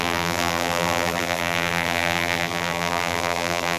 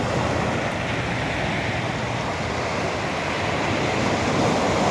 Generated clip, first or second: first